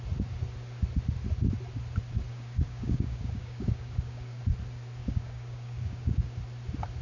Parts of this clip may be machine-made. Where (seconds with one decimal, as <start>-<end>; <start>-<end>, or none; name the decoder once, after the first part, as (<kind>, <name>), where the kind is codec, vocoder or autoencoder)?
2.3-4.4 (codec, DAC); 5.0-6.4